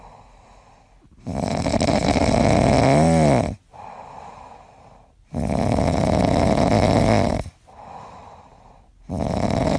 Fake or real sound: real